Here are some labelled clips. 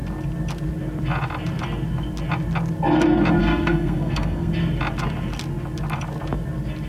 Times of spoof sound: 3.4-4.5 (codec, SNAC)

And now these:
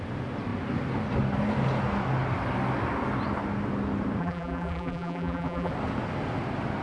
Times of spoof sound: 4.2-5.7 (vocoder, BigVGAN v2)

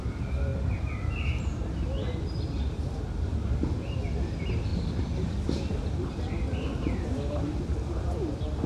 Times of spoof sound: none

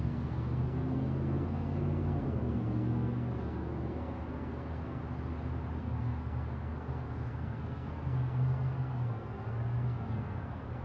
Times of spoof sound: 0.0-5.0 (codec, SNAC); 5.8-10.8

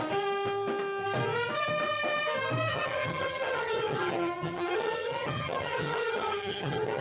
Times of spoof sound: 2.7-7.0 (vocoder, HiFi-GAN)

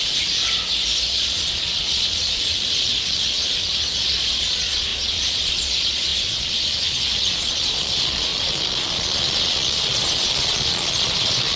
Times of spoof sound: 0.0-0.4 (vocoder, Vocos); 1.1-11.6

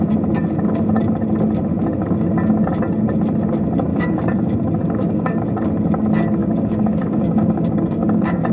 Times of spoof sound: 3.9-5.4 (codec, DAC); 6.4-8.5

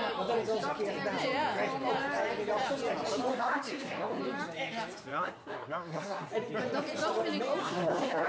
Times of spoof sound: 3.3-4.2 (codec, SNAC); 5.1-6.3; 7.6-8.3